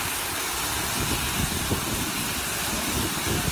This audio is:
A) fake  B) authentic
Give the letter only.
B